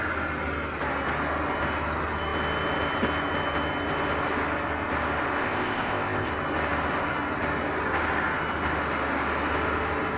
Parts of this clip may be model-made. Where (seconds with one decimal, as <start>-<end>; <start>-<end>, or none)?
5.4-6.3

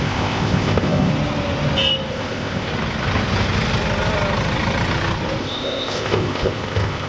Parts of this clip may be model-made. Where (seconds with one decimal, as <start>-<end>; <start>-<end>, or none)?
0.0-1.1; 2.1-2.7; 5.4-7.1

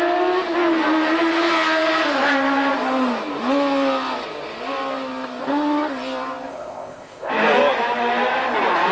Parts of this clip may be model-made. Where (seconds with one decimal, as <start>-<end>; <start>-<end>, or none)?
6.5-7.3

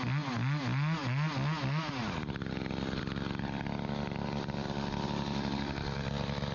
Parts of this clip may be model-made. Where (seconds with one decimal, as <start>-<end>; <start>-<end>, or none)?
none

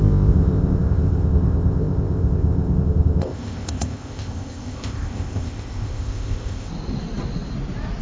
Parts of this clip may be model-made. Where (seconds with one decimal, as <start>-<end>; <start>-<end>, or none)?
0.0-6.7

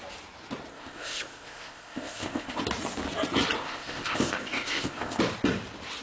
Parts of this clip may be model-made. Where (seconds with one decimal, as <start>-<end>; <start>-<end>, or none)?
0.7-2.6; 3.6-5.2